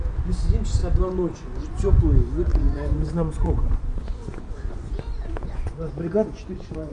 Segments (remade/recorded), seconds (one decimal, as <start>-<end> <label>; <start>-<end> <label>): 0.0-0.8 recorded; 0.8-1.7 remade; 1.7-2.5 recorded; 2.5-6.9 remade